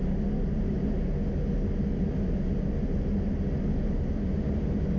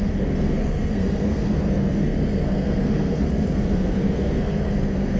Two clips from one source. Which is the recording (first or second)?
first